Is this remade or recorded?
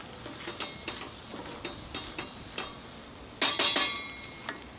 recorded